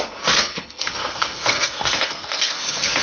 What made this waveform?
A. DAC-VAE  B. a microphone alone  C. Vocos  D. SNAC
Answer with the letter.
D